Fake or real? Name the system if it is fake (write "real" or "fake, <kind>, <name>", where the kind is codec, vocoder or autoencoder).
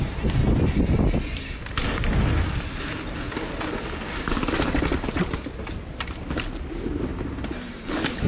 real